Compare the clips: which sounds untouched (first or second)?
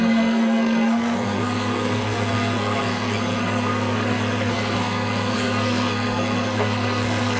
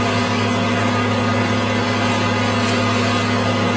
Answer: second